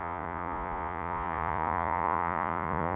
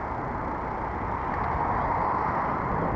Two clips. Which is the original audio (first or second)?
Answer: second